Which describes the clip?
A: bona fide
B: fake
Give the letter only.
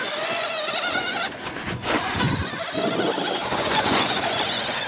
B